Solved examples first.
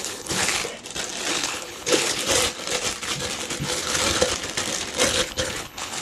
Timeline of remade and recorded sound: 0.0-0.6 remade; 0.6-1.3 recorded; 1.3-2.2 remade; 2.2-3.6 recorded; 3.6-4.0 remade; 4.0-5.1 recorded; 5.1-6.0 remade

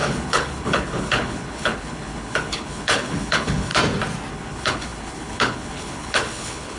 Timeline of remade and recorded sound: 0.0-3.7 remade; 3.7-4.3 recorded; 4.3-6.8 remade

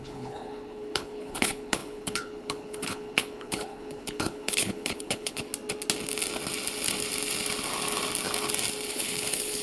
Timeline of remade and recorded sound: 0.0-5.5 remade; 5.5-8.9 recorded; 8.9-9.6 remade

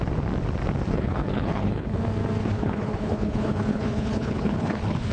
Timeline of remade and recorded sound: 0.0-0.9 recorded; 0.9-2.0 remade; 2.0-2.4 recorded; 2.4-5.1 remade

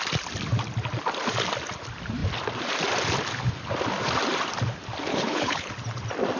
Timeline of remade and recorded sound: 0.0-5.1 recorded; 5.1-5.7 remade; 5.7-6.4 recorded

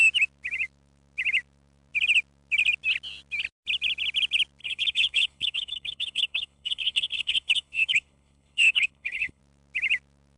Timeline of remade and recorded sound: 0.0-4.6 recorded; 4.6-9.4 remade; 9.4-10.4 recorded

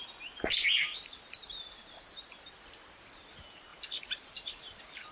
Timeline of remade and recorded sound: 0.0-5.1 recorded

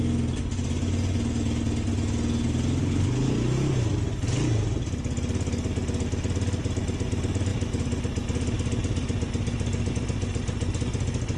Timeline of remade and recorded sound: 0.0-2.8 recorded; 2.8-3.3 remade; 3.3-11.4 recorded